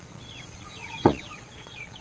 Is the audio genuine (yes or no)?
no